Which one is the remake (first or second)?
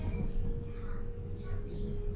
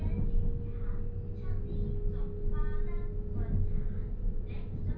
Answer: first